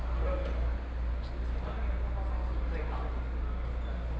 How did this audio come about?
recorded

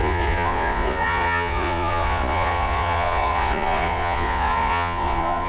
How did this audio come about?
remade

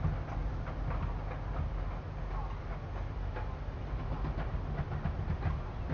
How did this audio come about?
recorded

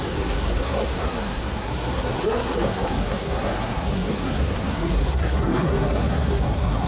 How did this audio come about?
remade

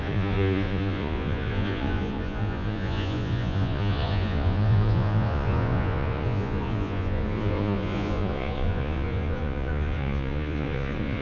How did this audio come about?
remade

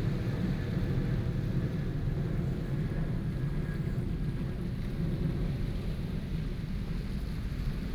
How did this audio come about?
recorded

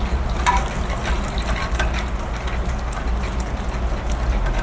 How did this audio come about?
recorded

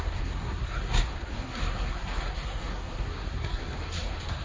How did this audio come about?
remade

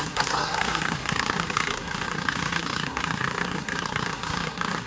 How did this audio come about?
remade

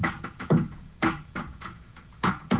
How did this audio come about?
remade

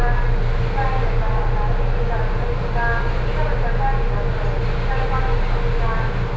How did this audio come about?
recorded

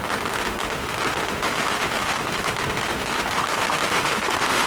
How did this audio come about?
remade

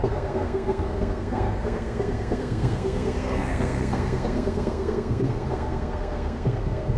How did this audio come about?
remade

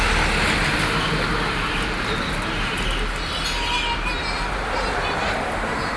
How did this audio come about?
recorded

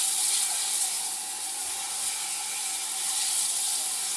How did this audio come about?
recorded